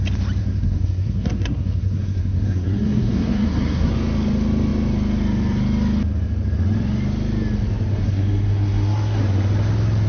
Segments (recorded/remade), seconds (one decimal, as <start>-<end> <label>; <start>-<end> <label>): 0.0-0.4 recorded; 0.4-3.9 remade; 3.9-7.9 recorded; 7.9-9.2 remade; 9.2-10.1 recorded